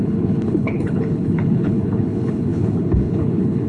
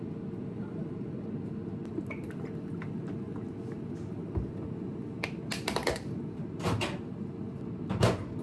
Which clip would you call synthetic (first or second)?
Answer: first